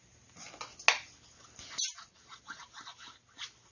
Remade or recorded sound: recorded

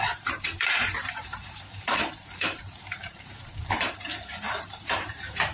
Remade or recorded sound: remade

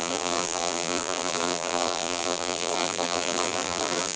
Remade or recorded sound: remade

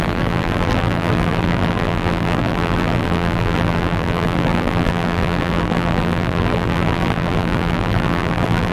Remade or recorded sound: remade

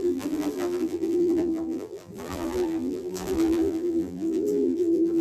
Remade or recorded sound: remade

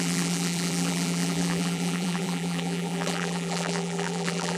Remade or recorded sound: remade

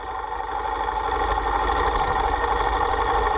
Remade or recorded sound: recorded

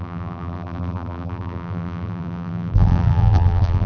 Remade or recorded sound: remade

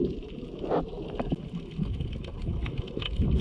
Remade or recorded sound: recorded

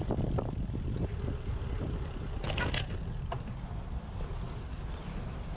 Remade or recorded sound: recorded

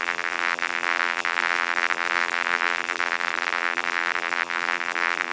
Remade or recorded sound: remade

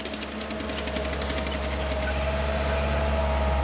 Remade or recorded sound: recorded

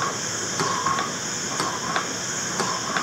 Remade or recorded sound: recorded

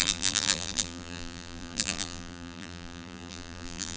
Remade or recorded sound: remade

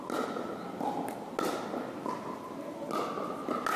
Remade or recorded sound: recorded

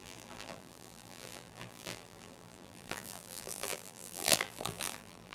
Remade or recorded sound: remade